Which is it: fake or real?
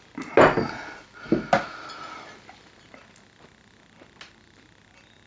real